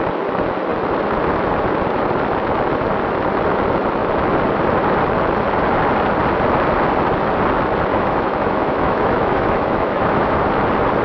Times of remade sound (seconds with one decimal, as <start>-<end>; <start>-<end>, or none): 7.9-10.4